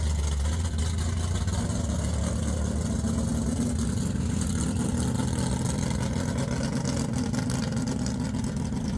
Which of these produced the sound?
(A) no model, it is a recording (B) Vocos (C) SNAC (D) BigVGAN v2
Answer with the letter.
A